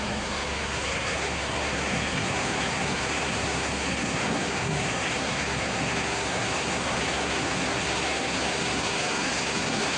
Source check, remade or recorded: remade